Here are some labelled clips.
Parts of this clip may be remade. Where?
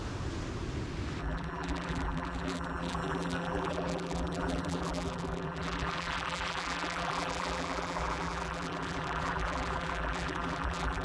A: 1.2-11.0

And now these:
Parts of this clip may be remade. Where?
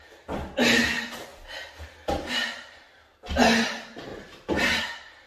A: none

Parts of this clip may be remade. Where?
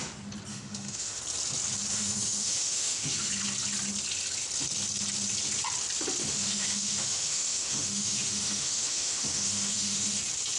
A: 0.5-1.2; 1.9-3.3; 6.2-10.2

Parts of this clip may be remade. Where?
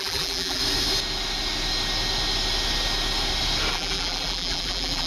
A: 0.0-0.6; 3.7-5.1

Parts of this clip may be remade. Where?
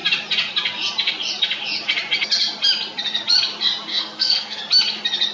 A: 3.9-4.6